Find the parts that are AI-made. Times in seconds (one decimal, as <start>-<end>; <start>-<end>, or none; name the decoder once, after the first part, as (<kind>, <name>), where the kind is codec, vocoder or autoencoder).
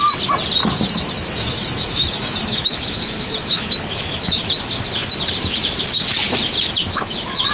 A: 0.6-4.6 (autoencoder, DAC-VAE); 6.8-7.5